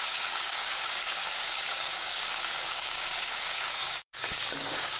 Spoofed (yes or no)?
yes